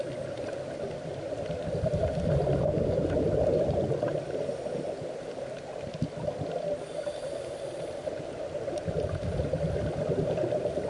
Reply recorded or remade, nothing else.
recorded